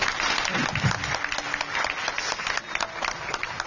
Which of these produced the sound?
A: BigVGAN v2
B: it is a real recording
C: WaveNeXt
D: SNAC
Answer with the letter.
B